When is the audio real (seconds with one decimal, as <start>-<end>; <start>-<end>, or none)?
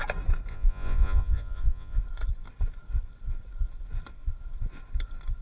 0.0-0.5; 2.0-5.4